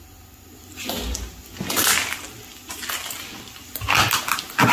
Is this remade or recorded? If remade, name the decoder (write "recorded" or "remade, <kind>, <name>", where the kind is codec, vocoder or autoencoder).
recorded